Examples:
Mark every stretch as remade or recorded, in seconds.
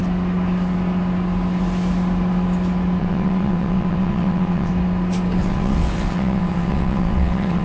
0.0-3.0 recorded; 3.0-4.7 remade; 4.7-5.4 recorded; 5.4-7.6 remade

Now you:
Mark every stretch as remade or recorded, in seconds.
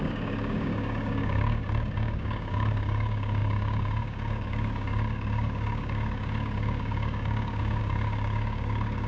0.0-9.1 remade